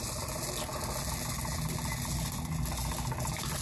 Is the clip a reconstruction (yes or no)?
no